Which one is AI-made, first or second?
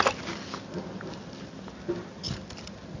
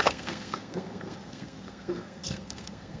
second